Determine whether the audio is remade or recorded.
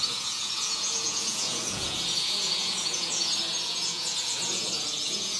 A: remade